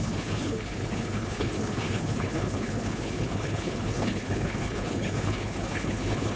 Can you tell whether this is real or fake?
fake